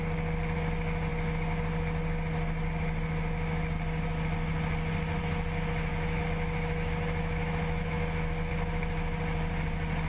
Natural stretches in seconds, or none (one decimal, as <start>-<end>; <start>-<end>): 0.0-5.9; 8.5-10.1